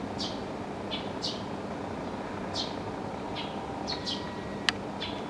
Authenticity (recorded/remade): recorded